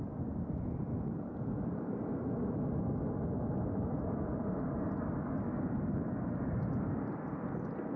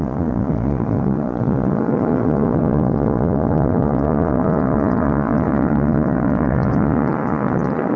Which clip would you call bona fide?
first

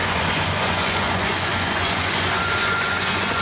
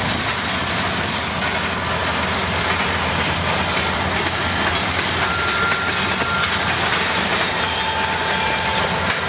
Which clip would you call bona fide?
second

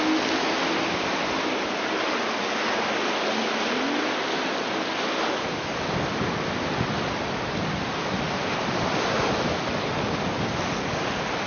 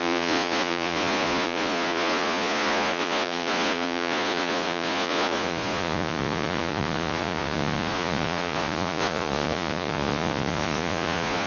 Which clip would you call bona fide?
first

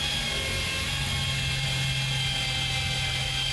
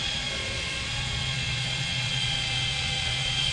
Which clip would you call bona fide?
first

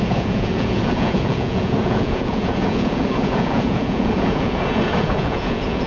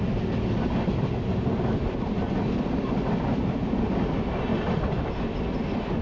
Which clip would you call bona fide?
second